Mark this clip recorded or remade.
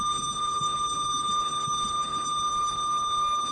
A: remade